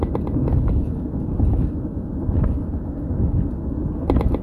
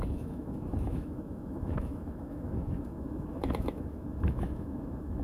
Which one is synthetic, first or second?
second